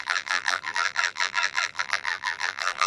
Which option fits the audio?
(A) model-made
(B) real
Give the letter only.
A